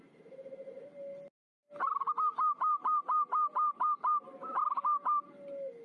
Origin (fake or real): real